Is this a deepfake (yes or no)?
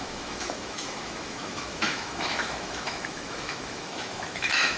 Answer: yes